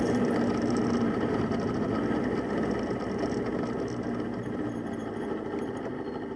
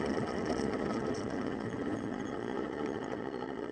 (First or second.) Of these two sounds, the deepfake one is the second